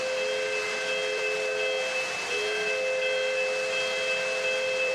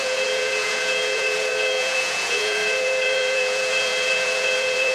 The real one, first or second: first